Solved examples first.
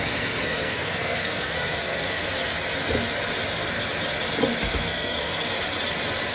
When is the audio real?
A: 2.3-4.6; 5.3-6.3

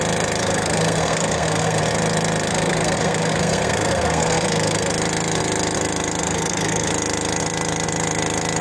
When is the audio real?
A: 0.0-0.4; 1.8-2.5; 4.9-6.2; 6.9-8.6

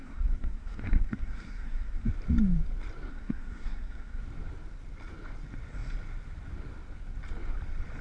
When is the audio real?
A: 2.1-3.1; 4.2-8.0

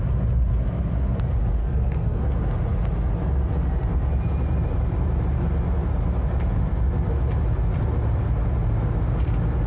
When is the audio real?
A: 0.0-1.6; 2.2-9.7

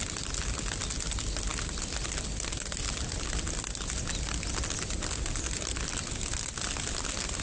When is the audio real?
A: 0.0-7.4